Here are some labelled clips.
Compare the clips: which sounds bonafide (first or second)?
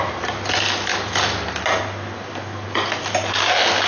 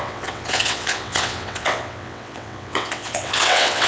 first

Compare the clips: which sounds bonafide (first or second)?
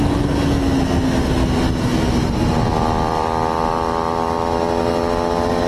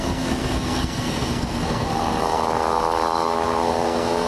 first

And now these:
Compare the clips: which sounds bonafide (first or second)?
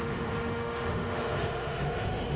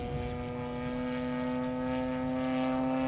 second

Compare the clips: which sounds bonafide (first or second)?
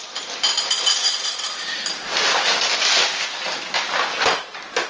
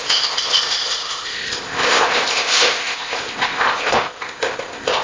first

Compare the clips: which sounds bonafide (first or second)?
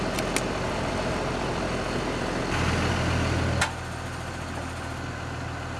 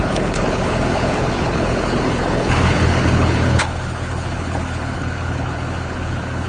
first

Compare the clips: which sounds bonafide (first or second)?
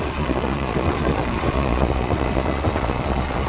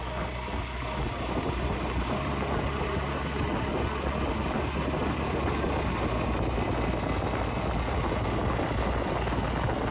second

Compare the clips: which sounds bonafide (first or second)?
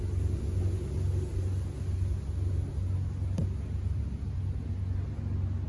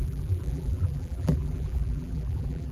first